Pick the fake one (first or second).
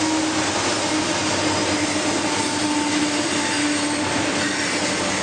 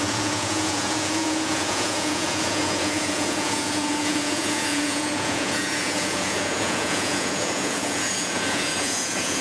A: second